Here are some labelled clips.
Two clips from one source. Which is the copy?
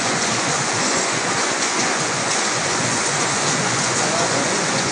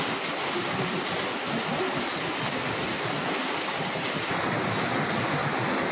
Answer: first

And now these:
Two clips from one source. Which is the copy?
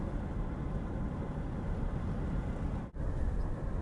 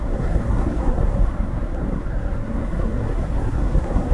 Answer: second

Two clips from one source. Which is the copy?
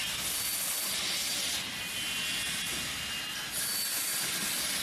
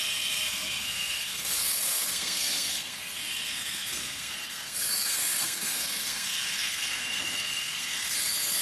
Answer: second